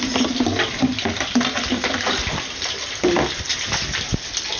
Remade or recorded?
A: recorded